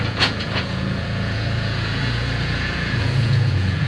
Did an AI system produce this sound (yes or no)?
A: yes